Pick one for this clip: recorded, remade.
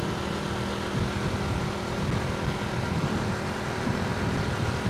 recorded